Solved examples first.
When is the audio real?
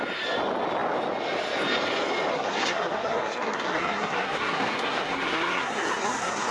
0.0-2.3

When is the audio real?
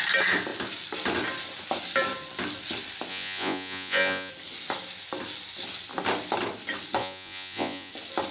0.0-3.1; 4.3-7.0; 7.9-8.3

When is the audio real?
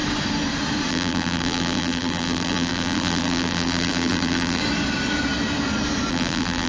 0.0-0.9; 4.6-6.1